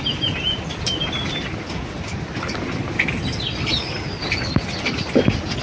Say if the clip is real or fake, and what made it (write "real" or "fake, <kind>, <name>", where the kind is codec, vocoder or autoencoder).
real